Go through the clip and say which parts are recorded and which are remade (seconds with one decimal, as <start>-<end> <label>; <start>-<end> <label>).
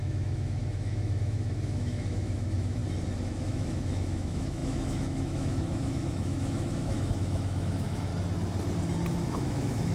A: 0.0-2.8 remade; 2.8-3.4 recorded; 3.4-8.1 remade; 8.1-9.3 recorded; 9.3-9.9 remade